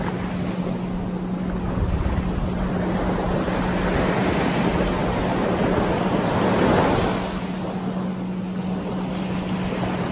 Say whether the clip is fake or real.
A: real